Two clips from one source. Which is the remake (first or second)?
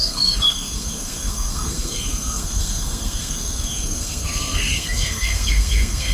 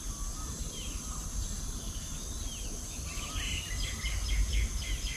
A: first